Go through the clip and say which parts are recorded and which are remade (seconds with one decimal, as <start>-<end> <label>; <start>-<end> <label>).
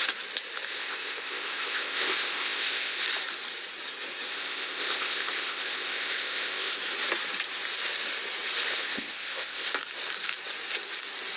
0.0-0.7 recorded; 0.7-3.0 remade; 3.0-4.3 recorded; 4.3-6.8 remade; 6.8-8.7 recorded; 8.7-9.7 remade; 9.7-11.4 recorded